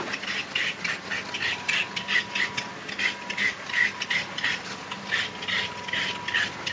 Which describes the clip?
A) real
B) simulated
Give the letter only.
A